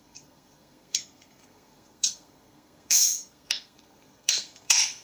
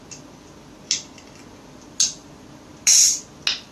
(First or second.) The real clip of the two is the second